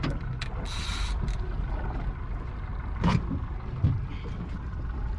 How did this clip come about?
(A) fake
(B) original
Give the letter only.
B